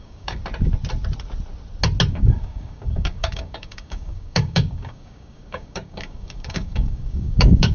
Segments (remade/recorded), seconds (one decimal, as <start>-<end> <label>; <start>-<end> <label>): 0.0-0.4 remade; 0.4-2.1 recorded; 2.1-7.7 remade